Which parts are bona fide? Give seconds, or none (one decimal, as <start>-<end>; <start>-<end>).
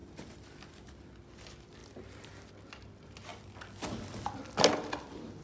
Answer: 1.2-1.8; 2.5-3.3; 4.2-5.4